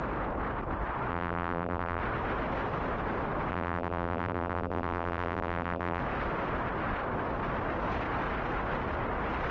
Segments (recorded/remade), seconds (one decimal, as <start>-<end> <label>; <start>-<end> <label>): 0.0-1.1 recorded; 1.1-2.0 remade; 2.0-3.5 recorded; 3.5-6.0 remade; 6.0-9.5 recorded